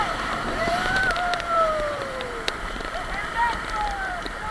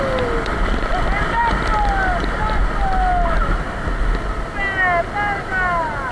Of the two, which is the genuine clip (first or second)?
second